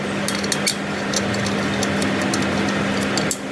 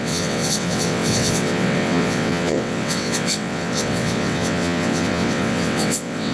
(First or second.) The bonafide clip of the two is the first